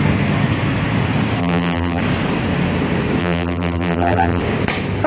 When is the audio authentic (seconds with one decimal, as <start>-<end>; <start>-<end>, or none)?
0.0-1.4; 2.0-3.2; 4.4-5.1